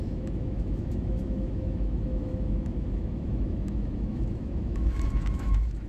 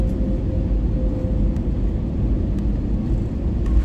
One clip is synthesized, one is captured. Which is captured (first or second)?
second